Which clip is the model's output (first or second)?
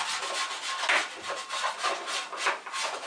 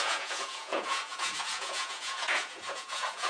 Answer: second